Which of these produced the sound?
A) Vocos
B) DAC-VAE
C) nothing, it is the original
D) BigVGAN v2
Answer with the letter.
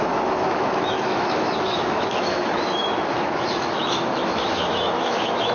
B